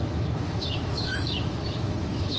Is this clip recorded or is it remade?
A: remade